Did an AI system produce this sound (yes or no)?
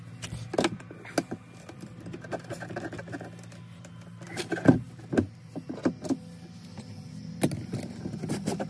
no